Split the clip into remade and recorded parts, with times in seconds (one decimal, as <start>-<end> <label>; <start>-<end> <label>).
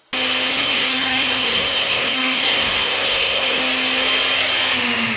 0.0-0.5 recorded; 0.5-3.6 remade; 3.6-5.2 recorded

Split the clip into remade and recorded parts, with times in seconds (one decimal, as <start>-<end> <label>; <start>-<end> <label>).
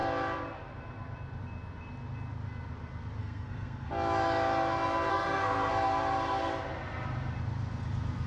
0.0-3.2 recorded; 3.2-3.9 remade; 3.9-5.1 recorded; 5.1-5.7 remade; 5.7-8.3 recorded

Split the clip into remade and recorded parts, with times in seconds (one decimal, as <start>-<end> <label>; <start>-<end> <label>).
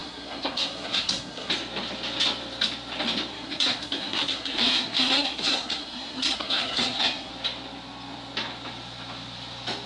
0.0-1.5 remade; 1.5-3.3 recorded; 3.3-7.3 remade; 7.3-9.9 recorded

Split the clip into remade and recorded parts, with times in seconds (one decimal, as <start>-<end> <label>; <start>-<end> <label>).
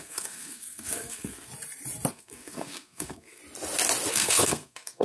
0.0-1.5 remade; 1.5-2.1 recorded; 2.1-3.4 remade; 3.4-4.1 recorded; 4.1-5.0 remade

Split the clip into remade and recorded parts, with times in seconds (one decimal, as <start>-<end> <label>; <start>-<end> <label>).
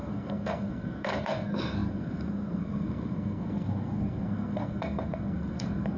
0.0-6.0 remade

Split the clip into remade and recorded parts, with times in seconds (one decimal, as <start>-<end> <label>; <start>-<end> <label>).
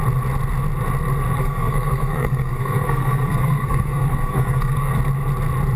0.0-1.4 recorded; 1.4-4.9 remade; 4.9-5.8 recorded